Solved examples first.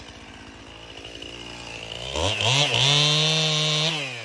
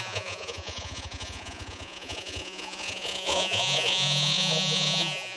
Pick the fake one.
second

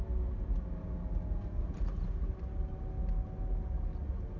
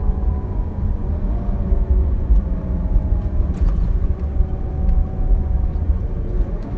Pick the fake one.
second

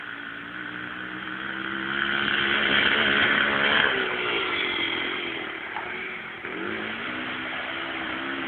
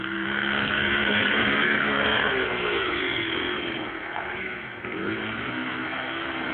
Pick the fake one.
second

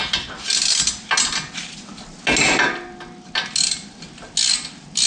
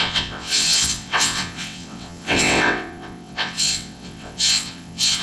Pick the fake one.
second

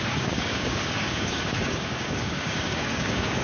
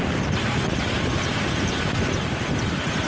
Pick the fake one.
first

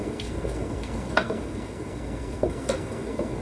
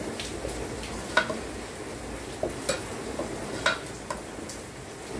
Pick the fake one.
first